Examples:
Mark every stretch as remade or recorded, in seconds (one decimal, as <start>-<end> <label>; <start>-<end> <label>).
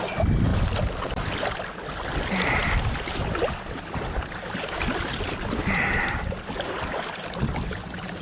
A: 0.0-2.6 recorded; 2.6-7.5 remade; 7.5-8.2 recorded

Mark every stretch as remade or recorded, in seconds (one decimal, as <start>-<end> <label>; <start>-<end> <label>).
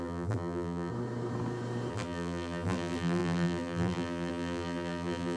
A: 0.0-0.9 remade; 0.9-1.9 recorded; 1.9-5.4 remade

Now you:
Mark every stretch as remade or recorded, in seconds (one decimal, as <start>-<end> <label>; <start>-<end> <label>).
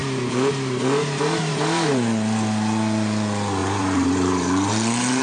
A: 0.0-1.5 remade; 1.5-3.6 recorded; 3.6-5.2 remade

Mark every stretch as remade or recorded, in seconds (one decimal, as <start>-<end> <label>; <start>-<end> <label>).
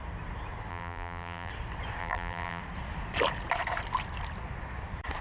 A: 0.0-0.7 recorded; 0.7-1.5 remade; 1.5-2.0 recorded; 2.0-2.6 remade; 2.6-5.2 recorded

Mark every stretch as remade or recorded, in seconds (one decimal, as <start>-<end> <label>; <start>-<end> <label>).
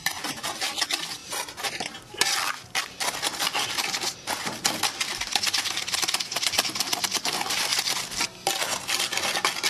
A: 0.0-5.1 recorded; 5.1-6.2 remade; 6.2-9.7 recorded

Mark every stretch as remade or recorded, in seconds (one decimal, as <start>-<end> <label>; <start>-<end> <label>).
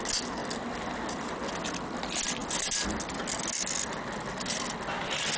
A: 0.0-0.4 recorded; 0.4-1.5 remade; 1.5-5.4 recorded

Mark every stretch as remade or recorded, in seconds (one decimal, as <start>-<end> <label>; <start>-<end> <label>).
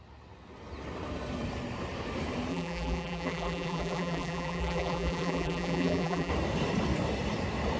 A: 0.0-2.5 recorded; 2.5-6.3 remade; 6.3-7.8 recorded